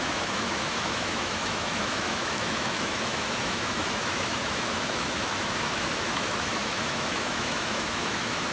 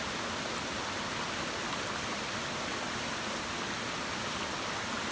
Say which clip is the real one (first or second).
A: second